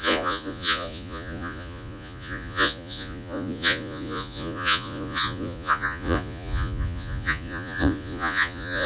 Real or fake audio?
fake